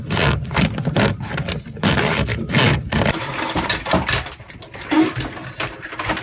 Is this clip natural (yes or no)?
yes